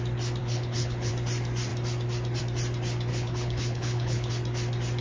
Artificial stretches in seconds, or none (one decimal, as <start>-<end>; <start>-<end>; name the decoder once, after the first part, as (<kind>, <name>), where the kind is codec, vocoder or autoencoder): 0.4-1.1 (codec, HILCodec); 3.1-4.3